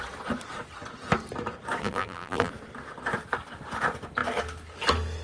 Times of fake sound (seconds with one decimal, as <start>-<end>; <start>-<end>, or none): 1.8-2.5

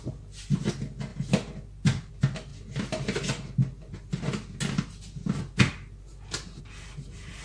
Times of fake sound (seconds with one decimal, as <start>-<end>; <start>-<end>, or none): none

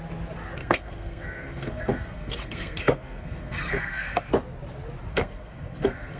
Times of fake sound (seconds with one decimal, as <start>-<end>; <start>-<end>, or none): 0.6-4.3; 5.1-6.2

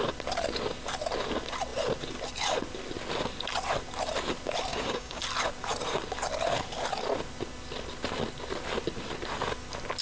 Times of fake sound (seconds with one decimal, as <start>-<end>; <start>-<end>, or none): 4.7-5.2

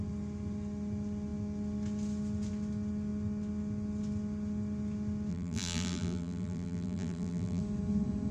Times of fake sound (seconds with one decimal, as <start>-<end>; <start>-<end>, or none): 5.3-7.6